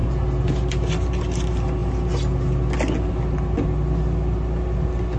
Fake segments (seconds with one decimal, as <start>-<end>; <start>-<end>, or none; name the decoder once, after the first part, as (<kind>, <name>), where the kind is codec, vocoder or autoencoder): none